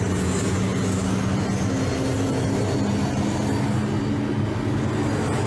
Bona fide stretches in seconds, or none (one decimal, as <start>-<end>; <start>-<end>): 0.0-5.5